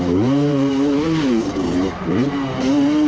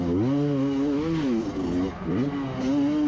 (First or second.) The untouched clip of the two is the second